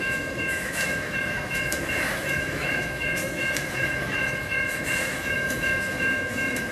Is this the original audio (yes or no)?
no